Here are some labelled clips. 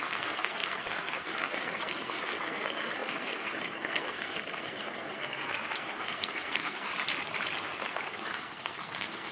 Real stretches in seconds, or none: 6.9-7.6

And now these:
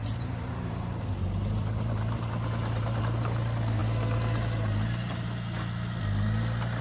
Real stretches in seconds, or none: 3.0-6.8

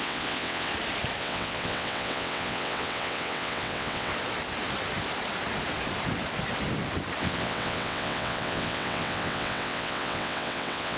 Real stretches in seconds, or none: 0.7-1.2; 4.1-7.2

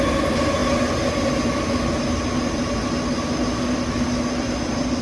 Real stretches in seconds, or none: 0.0-5.0

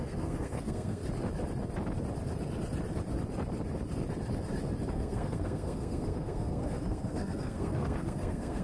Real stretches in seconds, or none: 1.0-4.9

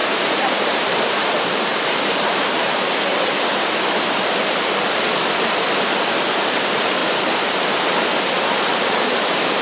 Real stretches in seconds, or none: 3.1-5.3; 7.0-8.2

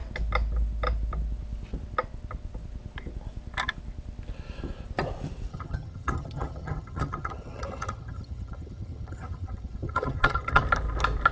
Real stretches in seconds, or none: 0.0-5.5; 10.6-11.3

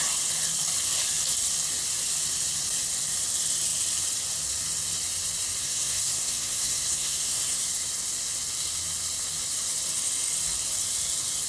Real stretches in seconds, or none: 0.0-5.6; 7.6-11.5